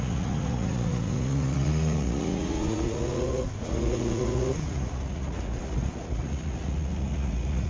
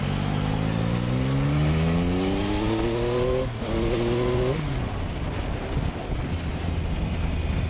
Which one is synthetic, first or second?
first